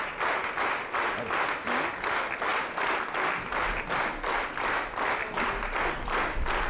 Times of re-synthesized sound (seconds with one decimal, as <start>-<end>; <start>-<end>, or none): none